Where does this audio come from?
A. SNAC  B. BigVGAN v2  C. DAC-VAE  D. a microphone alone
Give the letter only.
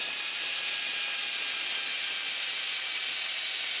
D